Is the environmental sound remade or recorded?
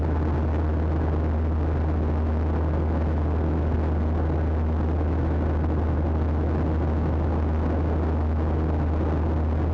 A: recorded